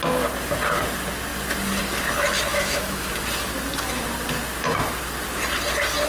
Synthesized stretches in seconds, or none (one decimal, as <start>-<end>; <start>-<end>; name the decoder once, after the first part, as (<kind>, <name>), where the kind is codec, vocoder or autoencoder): 2.5-3.1 (autoencoder, DAC-VAE)